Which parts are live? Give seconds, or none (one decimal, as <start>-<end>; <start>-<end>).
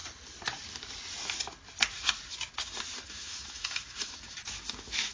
0.0-3.1